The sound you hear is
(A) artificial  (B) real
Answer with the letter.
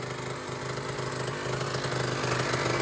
B